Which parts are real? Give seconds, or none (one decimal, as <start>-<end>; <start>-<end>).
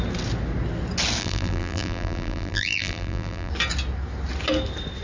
0.0-1.2; 3.5-5.0